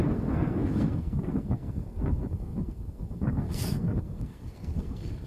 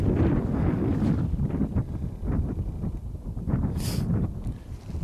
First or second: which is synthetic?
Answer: first